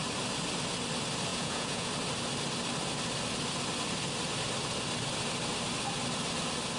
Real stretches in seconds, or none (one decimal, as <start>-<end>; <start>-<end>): 0.0-1.3; 1.9-6.8